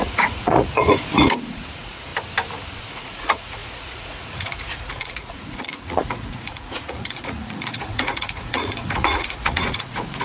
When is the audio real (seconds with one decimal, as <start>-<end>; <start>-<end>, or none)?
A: 2.1-2.9